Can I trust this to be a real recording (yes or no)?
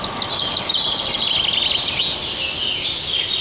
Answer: yes